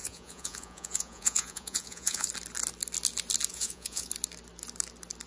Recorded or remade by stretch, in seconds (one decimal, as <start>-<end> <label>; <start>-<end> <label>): 0.0-2.3 remade; 2.3-3.5 recorded; 3.5-4.1 remade; 4.1-5.3 recorded